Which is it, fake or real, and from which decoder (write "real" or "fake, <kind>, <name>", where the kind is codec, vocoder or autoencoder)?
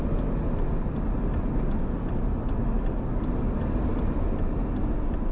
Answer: real